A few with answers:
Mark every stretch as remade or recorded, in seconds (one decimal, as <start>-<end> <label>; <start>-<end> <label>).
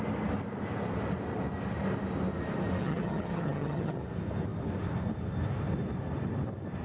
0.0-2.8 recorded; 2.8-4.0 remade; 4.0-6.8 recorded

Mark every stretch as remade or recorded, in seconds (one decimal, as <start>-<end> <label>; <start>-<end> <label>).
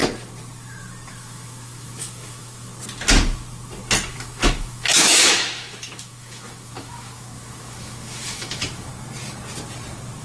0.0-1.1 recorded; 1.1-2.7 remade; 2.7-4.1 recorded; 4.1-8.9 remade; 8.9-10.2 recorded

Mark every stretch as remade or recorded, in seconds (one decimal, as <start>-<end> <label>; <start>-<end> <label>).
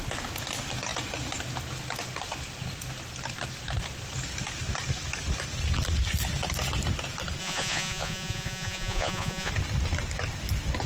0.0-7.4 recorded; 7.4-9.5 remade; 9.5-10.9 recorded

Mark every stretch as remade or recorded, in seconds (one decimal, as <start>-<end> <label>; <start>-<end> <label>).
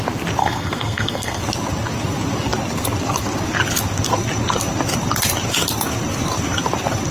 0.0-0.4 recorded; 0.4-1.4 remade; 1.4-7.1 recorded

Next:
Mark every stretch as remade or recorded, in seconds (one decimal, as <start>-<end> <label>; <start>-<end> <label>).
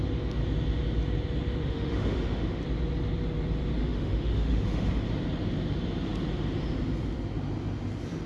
0.0-1.6 recorded; 1.6-2.6 remade; 2.6-3.8 recorded; 3.8-4.9 remade; 4.9-8.3 recorded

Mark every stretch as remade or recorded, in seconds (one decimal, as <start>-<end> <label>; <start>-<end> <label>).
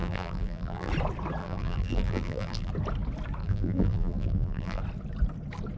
0.0-0.9 remade; 0.9-1.4 recorded; 1.4-2.7 remade; 2.7-3.4 recorded; 3.4-4.8 remade; 4.8-5.8 recorded